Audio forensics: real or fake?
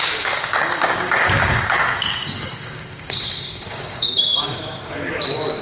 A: fake